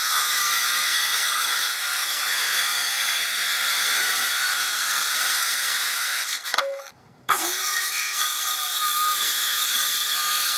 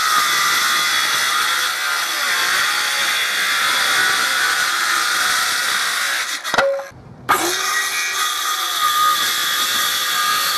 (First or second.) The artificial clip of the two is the first